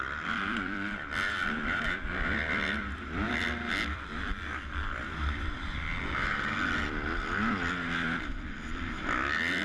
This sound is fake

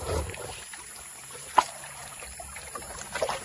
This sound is fake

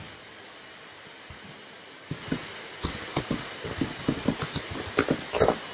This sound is real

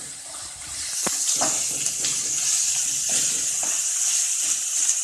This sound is real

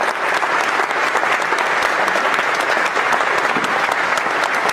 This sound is real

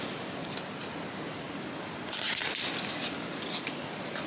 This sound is fake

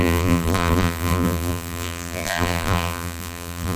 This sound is fake